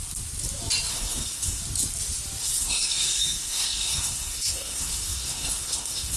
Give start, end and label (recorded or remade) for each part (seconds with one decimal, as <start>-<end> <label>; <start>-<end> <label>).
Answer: 0.0-0.9 recorded; 0.9-1.6 remade; 1.6-2.4 recorded; 2.4-6.2 remade